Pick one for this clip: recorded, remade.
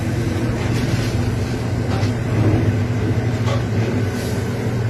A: recorded